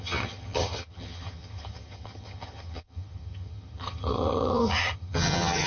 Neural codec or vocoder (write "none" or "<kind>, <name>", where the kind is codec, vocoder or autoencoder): vocoder, HiFi-GAN